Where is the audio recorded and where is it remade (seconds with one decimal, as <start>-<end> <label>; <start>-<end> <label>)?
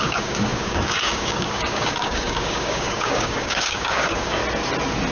0.0-4.4 remade; 4.4-5.1 recorded